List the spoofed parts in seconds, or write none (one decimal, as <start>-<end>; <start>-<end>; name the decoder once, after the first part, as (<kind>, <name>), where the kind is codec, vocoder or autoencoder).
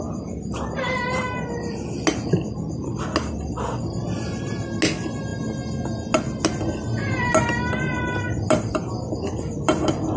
none